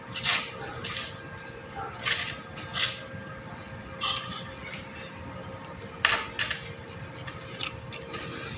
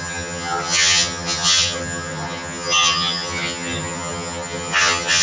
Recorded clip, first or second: first